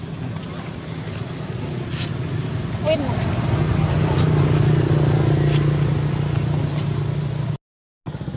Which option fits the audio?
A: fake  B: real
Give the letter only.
B